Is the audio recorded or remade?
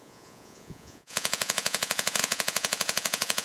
remade